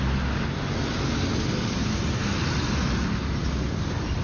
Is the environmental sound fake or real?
real